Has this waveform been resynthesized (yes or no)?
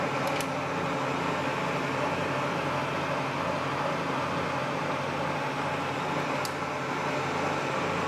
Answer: no